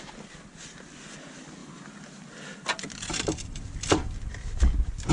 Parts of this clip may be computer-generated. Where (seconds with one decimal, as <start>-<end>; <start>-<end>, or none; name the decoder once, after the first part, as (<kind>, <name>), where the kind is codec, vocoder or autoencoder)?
1.6-5.1 (vocoder, BigVGAN v2)